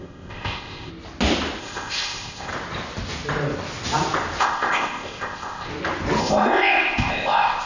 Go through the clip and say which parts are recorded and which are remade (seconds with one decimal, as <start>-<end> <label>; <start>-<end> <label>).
0.0-0.9 remade; 0.9-1.6 recorded; 1.6-2.5 remade; 2.5-4.4 recorded; 4.4-5.7 remade; 5.7-6.2 recorded; 6.2-7.7 remade